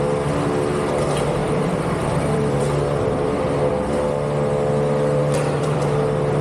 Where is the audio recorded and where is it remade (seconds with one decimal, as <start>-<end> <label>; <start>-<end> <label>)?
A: 0.0-1.4 recorded; 1.4-3.7 remade; 3.7-5.2 recorded; 5.2-5.8 remade; 5.8-6.4 recorded